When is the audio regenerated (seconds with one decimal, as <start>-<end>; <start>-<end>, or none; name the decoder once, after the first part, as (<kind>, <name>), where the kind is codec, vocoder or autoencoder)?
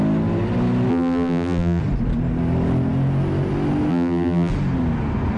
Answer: 0.9-1.8 (vocoder, BigVGAN v2); 3.9-4.5